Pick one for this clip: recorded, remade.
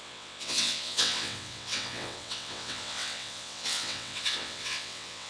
remade